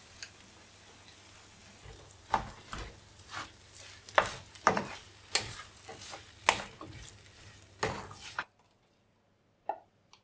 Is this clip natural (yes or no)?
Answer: yes